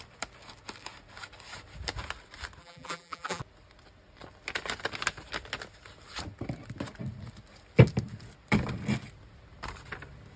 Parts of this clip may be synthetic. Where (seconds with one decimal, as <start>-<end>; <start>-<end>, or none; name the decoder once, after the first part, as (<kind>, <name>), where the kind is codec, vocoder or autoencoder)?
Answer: 2.6-3.4 (vocoder, BigVGAN v2)